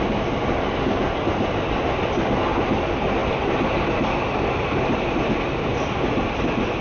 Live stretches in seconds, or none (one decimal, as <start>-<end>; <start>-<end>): 0.0-6.8